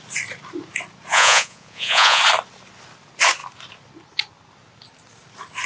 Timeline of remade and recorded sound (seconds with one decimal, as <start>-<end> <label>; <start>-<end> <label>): 0.0-1.1 recorded; 1.1-2.2 remade; 2.2-5.7 recorded